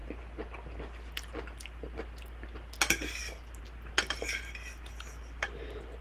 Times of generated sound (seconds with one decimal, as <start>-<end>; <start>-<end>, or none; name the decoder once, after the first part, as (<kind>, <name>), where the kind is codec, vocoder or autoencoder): none

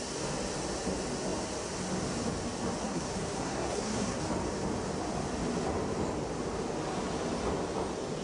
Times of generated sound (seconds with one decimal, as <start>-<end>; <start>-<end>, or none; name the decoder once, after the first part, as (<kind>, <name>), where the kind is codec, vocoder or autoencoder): 2.8-4.2 (codec, SNAC)

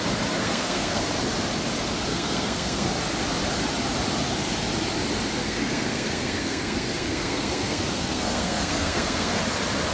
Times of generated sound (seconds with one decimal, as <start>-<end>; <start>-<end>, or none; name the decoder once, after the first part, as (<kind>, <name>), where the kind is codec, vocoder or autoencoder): 0.4-1.0 (codec, SNAC); 2.1-2.9; 5.4-9.4